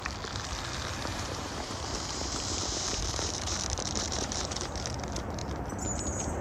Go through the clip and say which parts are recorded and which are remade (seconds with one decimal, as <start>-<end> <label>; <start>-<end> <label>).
0.0-1.1 recorded; 1.1-4.9 remade; 4.9-6.4 recorded